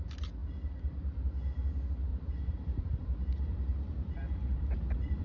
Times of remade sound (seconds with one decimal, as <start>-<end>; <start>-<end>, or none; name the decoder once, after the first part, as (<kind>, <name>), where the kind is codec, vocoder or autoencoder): 2.1-5.2 (vocoder, BigVGAN v2)